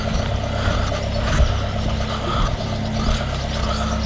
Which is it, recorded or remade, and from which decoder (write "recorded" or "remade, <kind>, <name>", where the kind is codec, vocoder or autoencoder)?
recorded